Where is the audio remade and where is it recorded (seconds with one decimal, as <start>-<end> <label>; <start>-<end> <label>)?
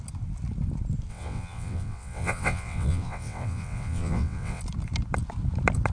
0.0-1.1 recorded; 1.1-4.6 remade; 4.6-5.9 recorded